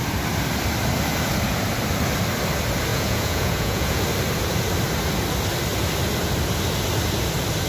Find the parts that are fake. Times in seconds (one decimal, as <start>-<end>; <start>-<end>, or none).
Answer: 2.9-4.0